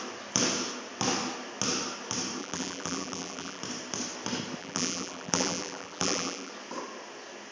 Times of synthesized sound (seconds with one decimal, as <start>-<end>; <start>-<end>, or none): 2.4-3.6; 4.6-6.5